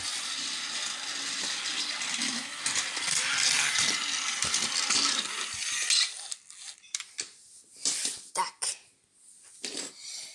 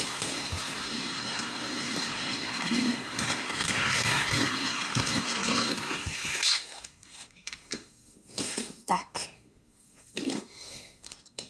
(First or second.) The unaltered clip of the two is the first